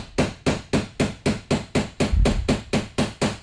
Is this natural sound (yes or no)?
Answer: yes